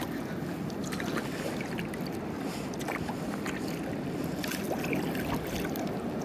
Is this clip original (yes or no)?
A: yes